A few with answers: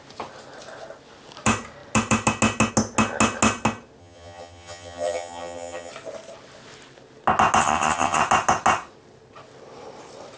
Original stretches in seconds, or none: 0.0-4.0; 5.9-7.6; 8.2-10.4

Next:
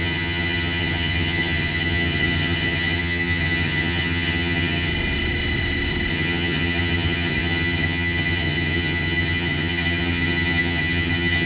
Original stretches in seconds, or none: 4.9-6.1

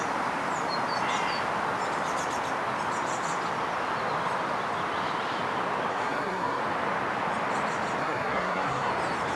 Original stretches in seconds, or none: 0.0-5.9; 6.6-8.0; 8.9-9.4

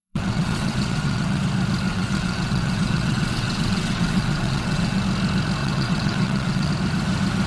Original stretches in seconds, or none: 1.4-1.9; 5.0-5.6; 6.7-7.5

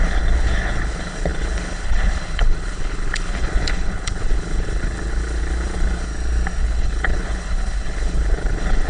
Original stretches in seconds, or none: 6.1-6.6

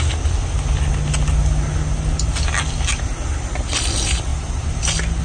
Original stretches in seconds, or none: 0.0-4.3; 4.8-5.2

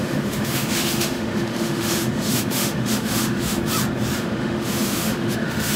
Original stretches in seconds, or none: 3.6-4.2

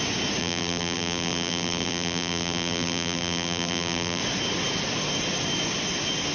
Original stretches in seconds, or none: 0.0-0.4; 4.2-6.3